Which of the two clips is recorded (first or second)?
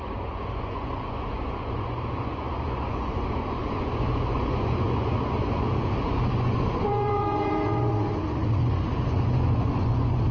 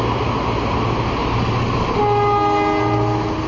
second